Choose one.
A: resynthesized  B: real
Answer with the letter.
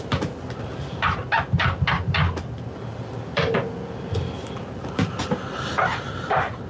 B